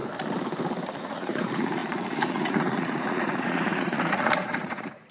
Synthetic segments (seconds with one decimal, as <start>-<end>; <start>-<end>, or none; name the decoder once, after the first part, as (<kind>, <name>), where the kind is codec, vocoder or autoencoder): 1.0-5.1 (vocoder, Vocos)